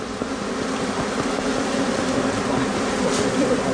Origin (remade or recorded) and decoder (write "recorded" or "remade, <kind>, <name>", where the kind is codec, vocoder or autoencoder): recorded